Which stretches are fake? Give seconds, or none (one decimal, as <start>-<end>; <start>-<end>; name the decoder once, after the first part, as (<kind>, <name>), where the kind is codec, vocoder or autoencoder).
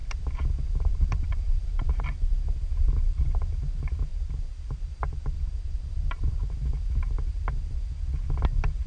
0.0-2.0 (vocoder, BigVGAN v2); 4.1-6.3